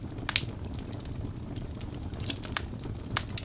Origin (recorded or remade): recorded